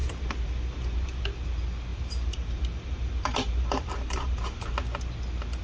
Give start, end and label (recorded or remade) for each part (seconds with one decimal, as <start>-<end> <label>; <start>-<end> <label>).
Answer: 0.0-1.2 remade; 1.2-1.9 recorded; 1.9-4.6 remade; 4.6-5.6 recorded